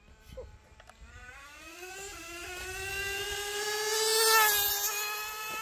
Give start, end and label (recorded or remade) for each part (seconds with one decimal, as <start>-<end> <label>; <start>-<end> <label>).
0.0-1.1 recorded; 1.1-1.9 remade; 1.9-2.9 recorded; 2.9-3.6 remade; 3.6-5.6 recorded